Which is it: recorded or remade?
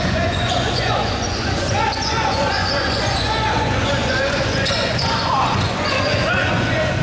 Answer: remade